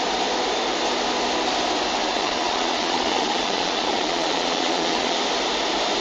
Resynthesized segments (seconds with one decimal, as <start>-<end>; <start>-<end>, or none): 2.0-5.2